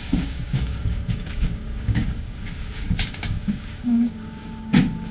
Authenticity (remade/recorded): remade